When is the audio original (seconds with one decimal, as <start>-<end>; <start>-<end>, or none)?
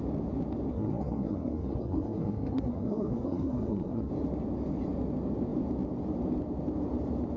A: 0.0-0.7; 4.1-7.4